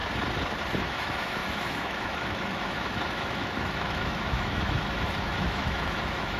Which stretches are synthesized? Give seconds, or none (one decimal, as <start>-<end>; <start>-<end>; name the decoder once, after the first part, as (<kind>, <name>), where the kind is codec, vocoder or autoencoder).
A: 0.8-6.4 (autoencoder, DAC-VAE)